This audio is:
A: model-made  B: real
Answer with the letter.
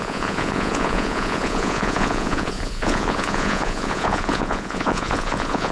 A